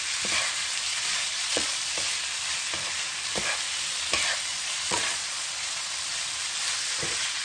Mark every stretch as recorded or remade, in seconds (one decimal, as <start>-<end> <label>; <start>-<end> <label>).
0.0-0.9 recorded; 0.9-1.8 remade; 1.8-4.5 recorded; 4.5-5.9 remade; 5.9-7.4 recorded